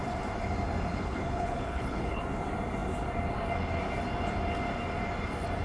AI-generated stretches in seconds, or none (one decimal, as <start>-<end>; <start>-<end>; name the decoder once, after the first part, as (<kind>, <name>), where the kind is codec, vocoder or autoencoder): 0.9-2.2 (codec, HILCodec)